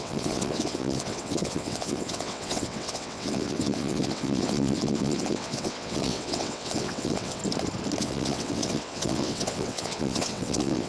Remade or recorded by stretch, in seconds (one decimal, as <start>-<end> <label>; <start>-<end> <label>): 0.0-7.4 remade; 7.4-8.0 recorded; 8.0-10.9 remade

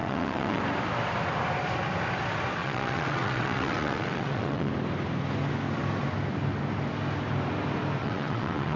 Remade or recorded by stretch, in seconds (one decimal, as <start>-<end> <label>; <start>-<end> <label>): 0.0-0.6 remade; 0.6-2.6 recorded; 2.6-4.7 remade; 4.7-8.0 recorded; 8.0-8.8 remade

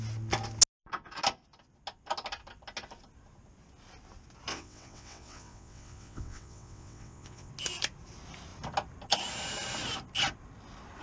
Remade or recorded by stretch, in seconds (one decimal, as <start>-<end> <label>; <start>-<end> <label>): 0.0-4.5 recorded; 4.5-7.5 remade; 7.5-11.0 recorded

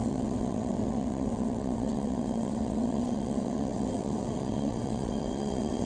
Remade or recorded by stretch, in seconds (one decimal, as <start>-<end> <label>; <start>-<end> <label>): 0.0-5.9 remade

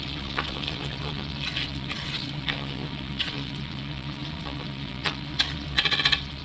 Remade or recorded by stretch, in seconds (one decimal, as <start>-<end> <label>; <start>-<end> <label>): 0.0-6.4 remade

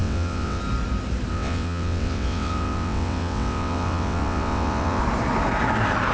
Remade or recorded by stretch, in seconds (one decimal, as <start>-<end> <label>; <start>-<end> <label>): 0.0-0.6 remade; 0.6-1.3 recorded; 1.3-5.0 remade; 5.0-6.1 recorded